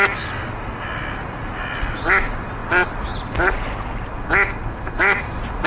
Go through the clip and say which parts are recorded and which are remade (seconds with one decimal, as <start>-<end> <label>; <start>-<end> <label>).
0.0-5.7 recorded